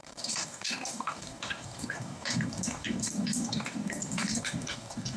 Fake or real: fake